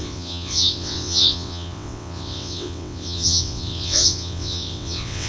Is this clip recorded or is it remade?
remade